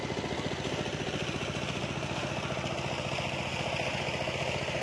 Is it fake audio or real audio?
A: real